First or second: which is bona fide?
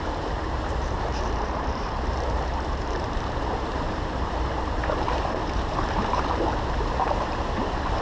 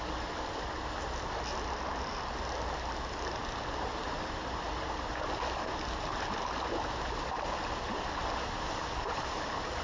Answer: second